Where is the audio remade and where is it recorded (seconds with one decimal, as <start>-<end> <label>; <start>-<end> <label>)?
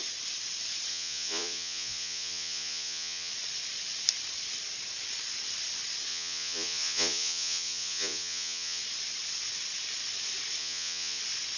0.0-0.9 recorded; 0.9-3.3 remade; 3.3-6.1 recorded; 6.1-8.8 remade; 8.8-10.6 recorded; 10.6-11.2 remade; 11.2-11.6 recorded